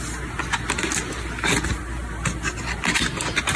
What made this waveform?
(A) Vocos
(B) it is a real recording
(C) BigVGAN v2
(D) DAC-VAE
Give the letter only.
B